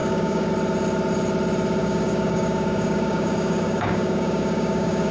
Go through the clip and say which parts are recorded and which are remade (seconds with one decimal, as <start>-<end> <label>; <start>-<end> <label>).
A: 0.0-0.5 remade; 0.5-1.8 recorded; 1.8-5.1 remade